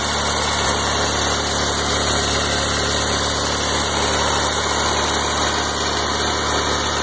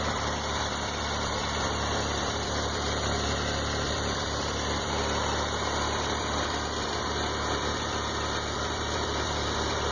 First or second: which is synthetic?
second